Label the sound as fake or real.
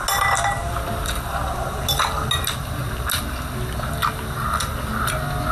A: real